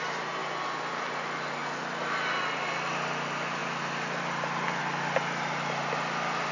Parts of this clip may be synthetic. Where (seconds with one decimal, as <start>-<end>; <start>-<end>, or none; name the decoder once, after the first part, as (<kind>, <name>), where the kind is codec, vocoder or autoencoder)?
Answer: none